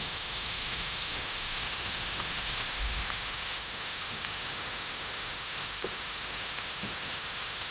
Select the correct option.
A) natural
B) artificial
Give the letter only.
B